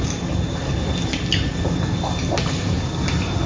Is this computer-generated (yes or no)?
no